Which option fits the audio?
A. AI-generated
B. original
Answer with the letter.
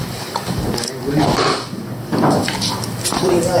A